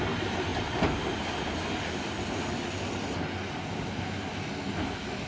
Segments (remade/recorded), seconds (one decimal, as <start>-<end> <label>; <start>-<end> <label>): 0.0-5.3 recorded